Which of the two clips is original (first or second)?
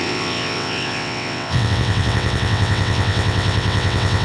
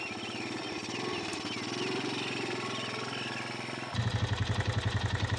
second